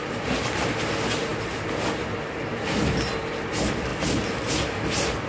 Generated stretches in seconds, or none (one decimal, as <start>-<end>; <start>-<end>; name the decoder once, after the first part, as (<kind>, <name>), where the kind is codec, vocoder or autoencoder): none